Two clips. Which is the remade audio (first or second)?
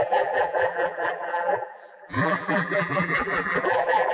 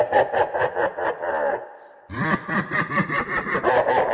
first